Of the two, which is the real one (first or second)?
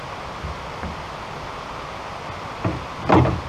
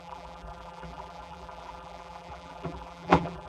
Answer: first